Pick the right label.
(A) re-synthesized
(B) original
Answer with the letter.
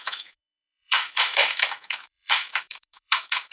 A